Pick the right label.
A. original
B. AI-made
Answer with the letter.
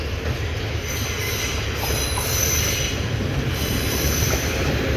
A